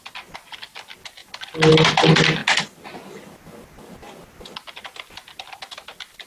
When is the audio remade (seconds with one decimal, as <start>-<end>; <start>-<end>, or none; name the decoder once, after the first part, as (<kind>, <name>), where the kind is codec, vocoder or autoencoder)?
none